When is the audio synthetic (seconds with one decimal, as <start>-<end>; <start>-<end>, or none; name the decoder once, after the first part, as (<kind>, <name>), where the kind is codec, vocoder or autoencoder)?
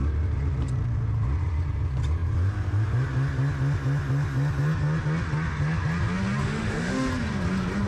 6.4-7.1 (autoencoder, DAC-VAE)